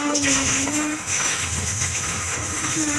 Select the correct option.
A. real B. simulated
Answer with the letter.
B